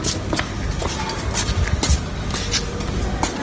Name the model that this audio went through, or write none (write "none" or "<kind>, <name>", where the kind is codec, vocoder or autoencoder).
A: none